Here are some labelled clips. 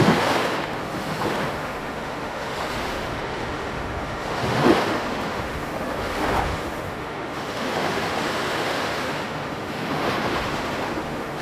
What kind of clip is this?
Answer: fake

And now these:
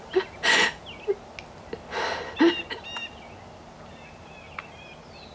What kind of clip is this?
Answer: real